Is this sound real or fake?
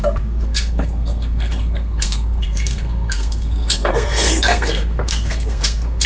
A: fake